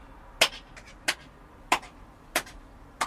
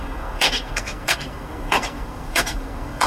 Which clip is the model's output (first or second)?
second